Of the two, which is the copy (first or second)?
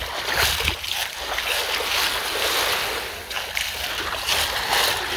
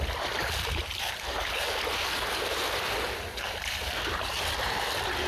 second